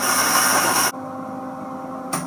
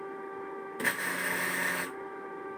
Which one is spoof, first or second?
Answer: second